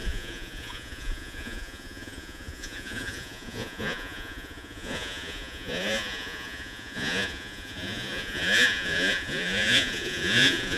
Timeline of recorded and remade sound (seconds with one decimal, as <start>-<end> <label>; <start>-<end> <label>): 0.0-10.8 remade